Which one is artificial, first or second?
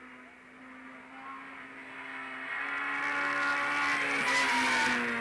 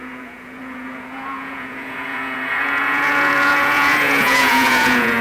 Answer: second